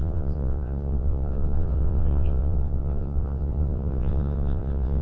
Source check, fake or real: fake